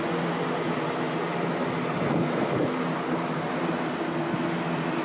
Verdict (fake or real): real